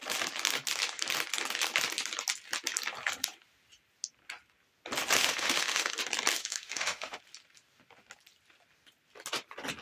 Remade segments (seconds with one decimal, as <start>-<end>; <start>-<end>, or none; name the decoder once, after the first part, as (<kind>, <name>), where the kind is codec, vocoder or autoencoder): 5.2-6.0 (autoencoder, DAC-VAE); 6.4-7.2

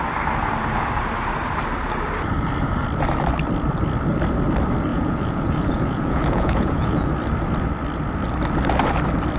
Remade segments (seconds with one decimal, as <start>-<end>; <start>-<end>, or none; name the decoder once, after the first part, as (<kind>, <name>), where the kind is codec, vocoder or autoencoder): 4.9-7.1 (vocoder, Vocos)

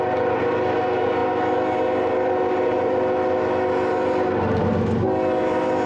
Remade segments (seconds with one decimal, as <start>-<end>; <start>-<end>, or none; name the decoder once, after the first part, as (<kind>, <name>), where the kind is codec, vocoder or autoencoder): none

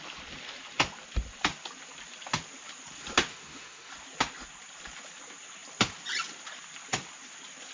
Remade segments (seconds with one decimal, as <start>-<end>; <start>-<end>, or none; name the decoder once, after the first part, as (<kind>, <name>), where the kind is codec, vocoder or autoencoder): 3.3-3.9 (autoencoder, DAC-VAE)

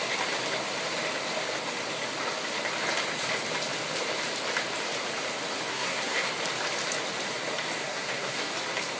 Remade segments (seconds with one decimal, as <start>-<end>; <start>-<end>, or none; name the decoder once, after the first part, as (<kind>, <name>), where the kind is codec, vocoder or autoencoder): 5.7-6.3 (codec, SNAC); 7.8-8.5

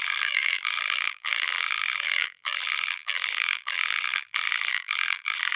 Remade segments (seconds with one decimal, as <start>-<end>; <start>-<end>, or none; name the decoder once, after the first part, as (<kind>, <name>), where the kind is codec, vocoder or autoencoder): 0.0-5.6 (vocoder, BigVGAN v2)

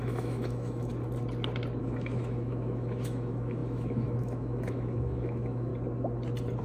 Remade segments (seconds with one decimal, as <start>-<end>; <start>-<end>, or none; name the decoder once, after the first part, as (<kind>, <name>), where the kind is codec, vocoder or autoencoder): 0.0-0.9 (autoencoder, DAC-VAE); 1.8-5.7

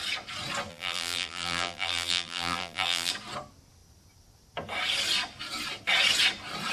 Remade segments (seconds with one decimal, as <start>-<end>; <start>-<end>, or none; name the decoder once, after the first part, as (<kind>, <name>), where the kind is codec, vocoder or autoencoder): 0.7-3.1 (vocoder, BigVGAN v2)